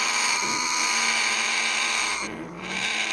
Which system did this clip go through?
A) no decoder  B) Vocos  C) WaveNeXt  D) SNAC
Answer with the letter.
A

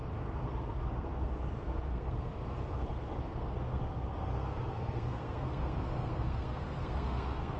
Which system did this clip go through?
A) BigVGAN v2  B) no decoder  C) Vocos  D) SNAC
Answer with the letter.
D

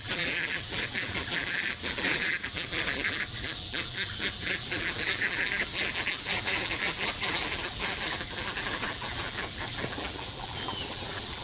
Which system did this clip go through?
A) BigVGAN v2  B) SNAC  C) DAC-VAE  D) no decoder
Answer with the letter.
A